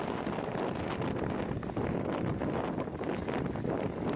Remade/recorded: recorded